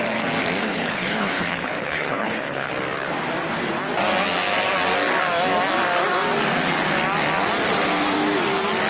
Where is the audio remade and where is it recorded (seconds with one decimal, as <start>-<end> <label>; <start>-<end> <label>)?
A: 0.0-0.6 recorded; 0.6-2.7 remade; 2.7-8.9 recorded